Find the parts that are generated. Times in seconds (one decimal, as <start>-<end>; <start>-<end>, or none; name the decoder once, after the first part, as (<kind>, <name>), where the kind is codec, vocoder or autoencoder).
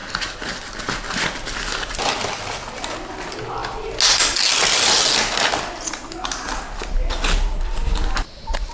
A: none